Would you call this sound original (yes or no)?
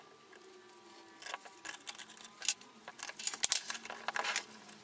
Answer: yes